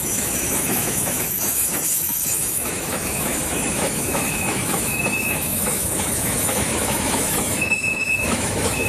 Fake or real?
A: fake